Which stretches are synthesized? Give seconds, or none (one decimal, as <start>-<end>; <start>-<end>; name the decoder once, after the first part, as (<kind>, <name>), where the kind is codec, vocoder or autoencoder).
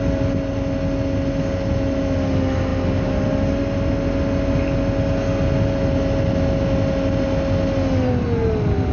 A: none